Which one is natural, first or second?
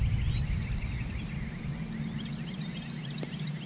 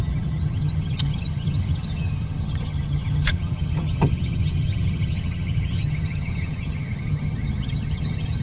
first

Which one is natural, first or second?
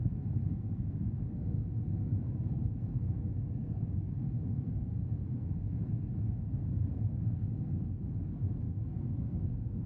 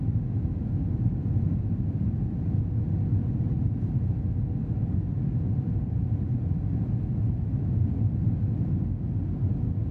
second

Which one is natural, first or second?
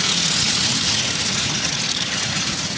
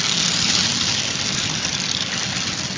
second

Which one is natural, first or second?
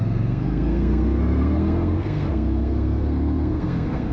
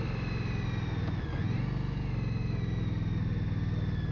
second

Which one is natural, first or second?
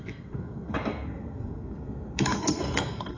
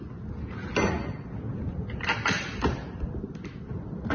second